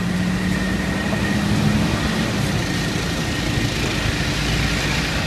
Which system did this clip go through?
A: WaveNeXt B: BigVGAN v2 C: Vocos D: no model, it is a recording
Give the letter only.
D